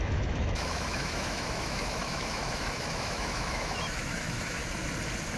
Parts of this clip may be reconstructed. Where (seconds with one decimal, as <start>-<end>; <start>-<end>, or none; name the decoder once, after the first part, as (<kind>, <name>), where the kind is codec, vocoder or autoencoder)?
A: 0.0-4.6 (autoencoder, DAC-VAE)